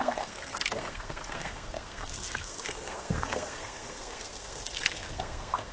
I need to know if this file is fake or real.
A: fake